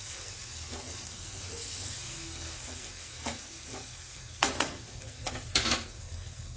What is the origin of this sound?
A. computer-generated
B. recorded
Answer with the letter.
A